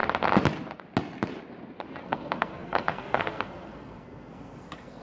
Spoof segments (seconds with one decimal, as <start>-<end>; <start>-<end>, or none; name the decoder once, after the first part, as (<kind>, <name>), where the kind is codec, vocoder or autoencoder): 2.0-5.0 (codec, SNAC)

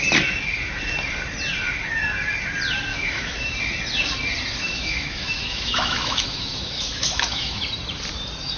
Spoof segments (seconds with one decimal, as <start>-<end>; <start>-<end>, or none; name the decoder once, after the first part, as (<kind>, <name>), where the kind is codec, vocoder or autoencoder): 2.9-3.6 (autoencoder, DAC-VAE); 4.6-7.6

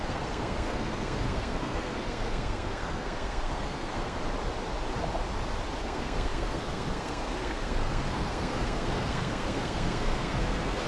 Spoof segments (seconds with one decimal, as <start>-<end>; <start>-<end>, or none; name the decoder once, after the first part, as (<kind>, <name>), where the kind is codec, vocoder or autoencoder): 0.0-4.2 (codec, SNAC); 5.8-10.9